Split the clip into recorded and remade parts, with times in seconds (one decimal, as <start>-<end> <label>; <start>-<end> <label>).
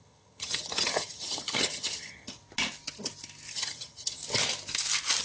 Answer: 0.0-2.4 remade; 2.4-3.5 recorded; 3.5-4.2 remade; 4.2-5.2 recorded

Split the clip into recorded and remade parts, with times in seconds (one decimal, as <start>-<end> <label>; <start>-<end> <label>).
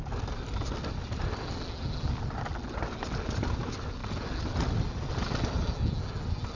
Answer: 0.0-6.5 recorded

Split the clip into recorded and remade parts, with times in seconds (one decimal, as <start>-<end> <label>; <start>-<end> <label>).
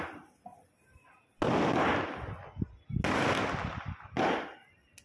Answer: 0.0-5.0 recorded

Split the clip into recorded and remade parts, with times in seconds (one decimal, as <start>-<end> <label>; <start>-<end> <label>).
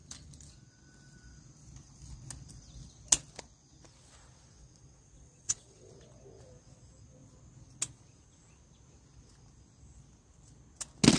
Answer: 0.0-4.6 recorded; 4.6-5.9 remade; 5.9-11.2 recorded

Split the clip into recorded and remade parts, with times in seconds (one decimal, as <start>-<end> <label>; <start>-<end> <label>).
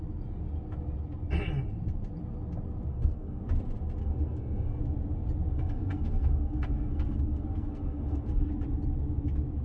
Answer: 0.0-2.9 recorded; 2.9-3.4 remade; 3.4-4.0 recorded; 4.0-4.8 remade; 4.8-5.5 recorded; 5.5-8.5 remade; 8.5-9.6 recorded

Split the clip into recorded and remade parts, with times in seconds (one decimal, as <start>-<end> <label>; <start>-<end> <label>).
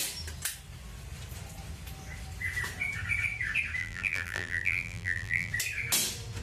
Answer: 0.0-3.8 recorded; 3.8-5.5 remade; 5.5-6.4 recorded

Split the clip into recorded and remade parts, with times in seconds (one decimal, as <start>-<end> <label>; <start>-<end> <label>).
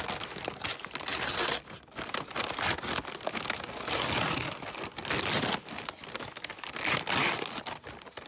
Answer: 0.0-8.3 recorded